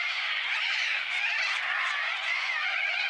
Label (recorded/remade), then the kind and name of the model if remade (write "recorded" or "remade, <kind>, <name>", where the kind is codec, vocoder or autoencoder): remade, vocoder, Vocos